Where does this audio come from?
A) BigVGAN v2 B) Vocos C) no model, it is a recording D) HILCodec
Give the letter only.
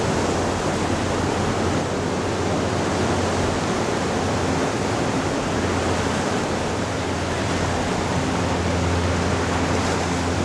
C